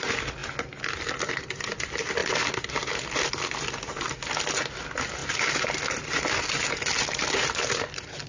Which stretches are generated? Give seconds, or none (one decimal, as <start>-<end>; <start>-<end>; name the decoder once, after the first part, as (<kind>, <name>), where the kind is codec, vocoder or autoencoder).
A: none

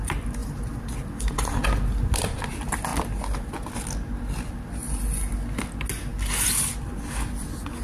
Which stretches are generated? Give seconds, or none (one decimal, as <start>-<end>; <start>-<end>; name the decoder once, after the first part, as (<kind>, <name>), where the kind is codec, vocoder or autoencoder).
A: 0.4-0.9 (vocoder, BigVGAN v2)

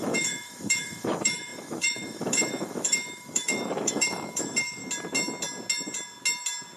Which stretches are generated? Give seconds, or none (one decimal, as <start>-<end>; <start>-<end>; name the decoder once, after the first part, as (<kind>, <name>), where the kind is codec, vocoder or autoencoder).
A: 0.0-4.8 (autoencoder, DAC-VAE)

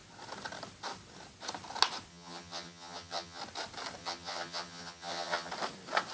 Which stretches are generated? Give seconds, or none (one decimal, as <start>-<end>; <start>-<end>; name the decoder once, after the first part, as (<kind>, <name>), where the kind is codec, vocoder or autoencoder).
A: 2.1-3.4 (vocoder, HiFi-GAN); 4.0-5.5